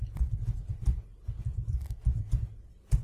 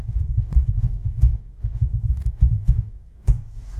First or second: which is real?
first